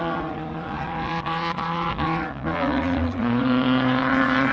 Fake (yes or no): yes